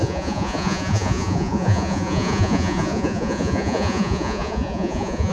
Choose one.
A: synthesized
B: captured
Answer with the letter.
A